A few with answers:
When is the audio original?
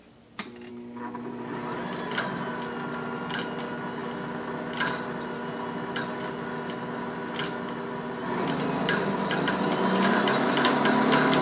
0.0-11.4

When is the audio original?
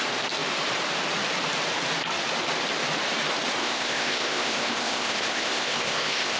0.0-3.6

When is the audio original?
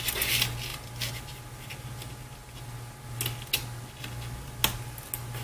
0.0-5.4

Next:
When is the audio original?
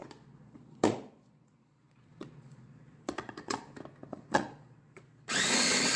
3.6-4.0; 5.3-6.0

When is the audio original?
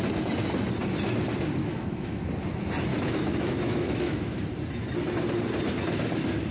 0.0-1.6; 2.2-2.9; 4.4-6.5